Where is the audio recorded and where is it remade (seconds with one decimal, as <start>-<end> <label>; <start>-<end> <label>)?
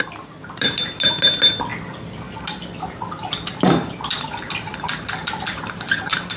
0.0-6.4 recorded